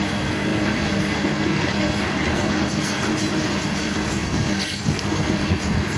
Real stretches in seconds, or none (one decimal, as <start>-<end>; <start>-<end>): 3.1-3.6